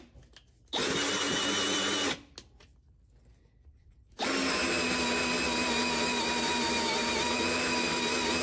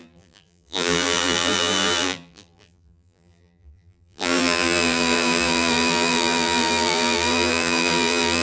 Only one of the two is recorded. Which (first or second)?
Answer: first